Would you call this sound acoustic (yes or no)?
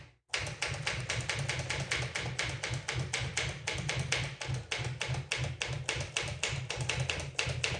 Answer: yes